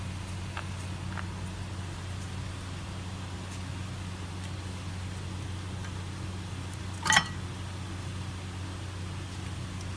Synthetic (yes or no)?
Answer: no